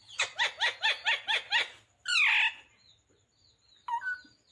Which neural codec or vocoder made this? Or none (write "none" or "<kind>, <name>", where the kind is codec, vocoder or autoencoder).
none